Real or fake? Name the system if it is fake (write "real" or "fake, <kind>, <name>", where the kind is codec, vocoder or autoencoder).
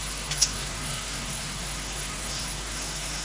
fake, codec, SNAC